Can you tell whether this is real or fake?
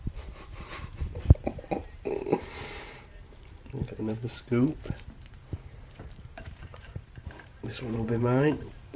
fake